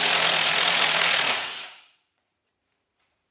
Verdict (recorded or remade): remade